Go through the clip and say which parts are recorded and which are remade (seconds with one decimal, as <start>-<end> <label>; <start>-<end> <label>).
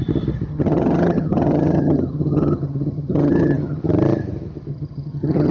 0.0-0.5 recorded; 0.5-3.8 remade; 3.8-4.7 recorded; 4.7-5.5 remade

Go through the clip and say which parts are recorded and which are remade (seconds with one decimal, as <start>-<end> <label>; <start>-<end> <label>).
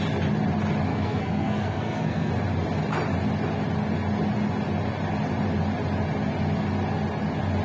0.0-0.9 recorded; 0.9-2.3 remade; 2.3-7.6 recorded